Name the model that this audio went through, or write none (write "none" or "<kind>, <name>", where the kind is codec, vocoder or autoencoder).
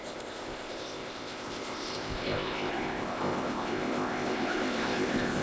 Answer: codec, ZipCodec